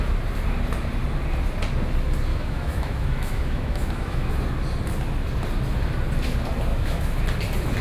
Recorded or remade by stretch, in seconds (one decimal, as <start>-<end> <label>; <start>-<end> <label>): 0.0-2.3 recorded; 2.3-4.3 remade; 4.3-6.7 recorded; 6.7-7.2 remade; 7.2-7.8 recorded